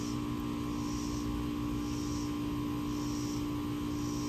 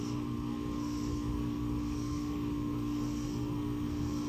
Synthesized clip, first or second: second